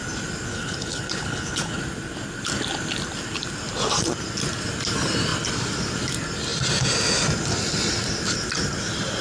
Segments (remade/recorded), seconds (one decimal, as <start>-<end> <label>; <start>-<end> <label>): 0.0-0.5 recorded; 0.5-1.8 remade; 1.8-9.2 recorded